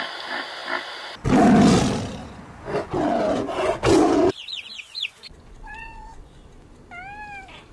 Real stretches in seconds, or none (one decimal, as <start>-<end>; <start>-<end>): 0.0-2.2; 6.4-7.7